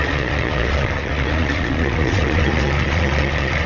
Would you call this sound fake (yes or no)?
yes